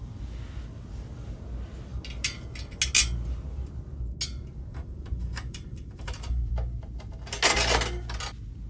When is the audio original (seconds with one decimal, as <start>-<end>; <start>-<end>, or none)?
0.0-4.7; 6.5-8.7

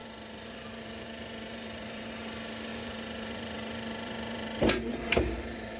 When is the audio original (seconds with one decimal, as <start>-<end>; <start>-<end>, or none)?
2.1-2.7

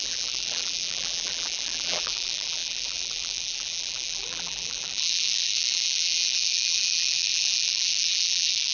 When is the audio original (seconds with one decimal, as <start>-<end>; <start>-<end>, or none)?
none

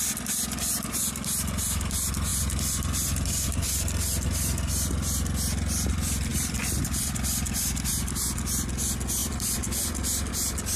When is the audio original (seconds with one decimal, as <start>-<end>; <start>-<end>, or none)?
0.0-6.3; 7.9-9.2; 10.3-10.8

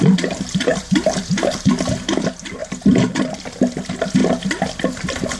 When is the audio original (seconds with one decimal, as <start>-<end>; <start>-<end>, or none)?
0.0-0.7; 1.7-2.6; 3.1-5.4

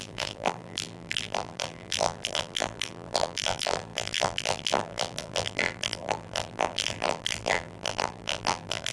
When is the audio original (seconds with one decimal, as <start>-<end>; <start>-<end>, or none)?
none